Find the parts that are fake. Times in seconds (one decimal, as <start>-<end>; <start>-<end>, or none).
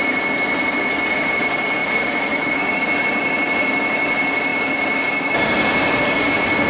1.8-2.8